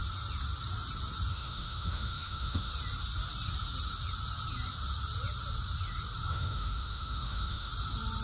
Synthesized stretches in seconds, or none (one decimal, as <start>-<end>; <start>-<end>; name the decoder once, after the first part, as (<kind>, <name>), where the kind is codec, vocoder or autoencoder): 1.3-2.7 (autoencoder, DAC-VAE); 6.3-7.7